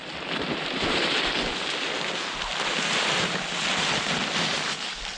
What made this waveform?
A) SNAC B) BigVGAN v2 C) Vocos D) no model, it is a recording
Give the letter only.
D